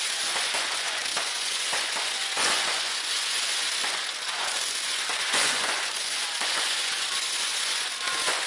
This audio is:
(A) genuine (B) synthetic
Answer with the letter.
B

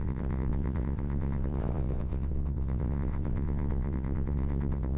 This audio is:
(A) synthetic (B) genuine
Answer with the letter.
A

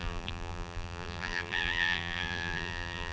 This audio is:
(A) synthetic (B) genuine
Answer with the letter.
A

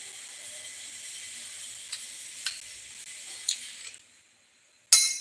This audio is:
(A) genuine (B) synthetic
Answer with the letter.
A